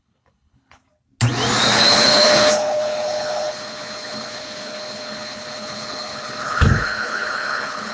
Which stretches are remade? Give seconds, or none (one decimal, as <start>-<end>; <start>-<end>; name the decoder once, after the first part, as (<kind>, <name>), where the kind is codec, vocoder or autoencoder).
0.0-0.8 (codec, HILCodec); 1.6-7.9